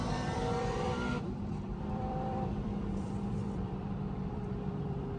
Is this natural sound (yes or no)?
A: no